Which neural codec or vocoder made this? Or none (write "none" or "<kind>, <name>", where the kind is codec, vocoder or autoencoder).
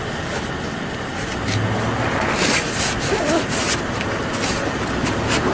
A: none